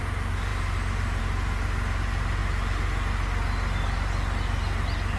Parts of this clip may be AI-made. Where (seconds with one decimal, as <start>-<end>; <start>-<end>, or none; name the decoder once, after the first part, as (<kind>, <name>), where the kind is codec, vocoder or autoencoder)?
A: none